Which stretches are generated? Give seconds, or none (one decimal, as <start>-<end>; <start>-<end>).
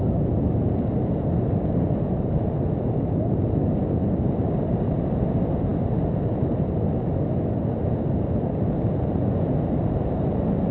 none